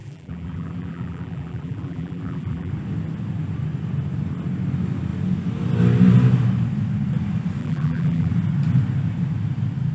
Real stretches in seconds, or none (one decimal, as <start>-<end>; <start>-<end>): 2.7-7.6; 8.3-9.9